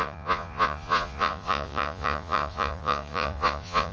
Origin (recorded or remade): remade